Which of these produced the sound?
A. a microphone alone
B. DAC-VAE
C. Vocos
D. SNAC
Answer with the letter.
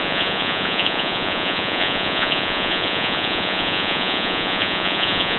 C